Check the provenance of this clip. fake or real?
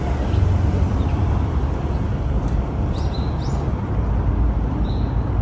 real